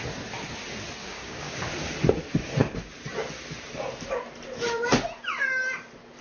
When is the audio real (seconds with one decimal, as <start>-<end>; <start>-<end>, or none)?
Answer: 0.0-1.0; 1.6-6.2